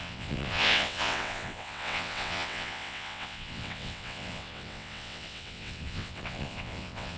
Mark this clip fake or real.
fake